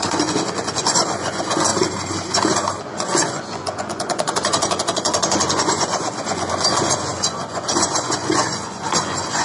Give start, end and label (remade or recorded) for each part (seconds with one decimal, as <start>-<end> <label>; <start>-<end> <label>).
0.0-1.7 remade; 1.7-2.8 recorded; 2.8-9.4 remade